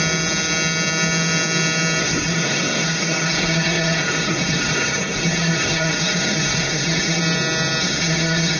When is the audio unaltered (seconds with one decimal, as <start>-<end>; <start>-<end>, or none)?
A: 0.0-2.0; 7.2-7.8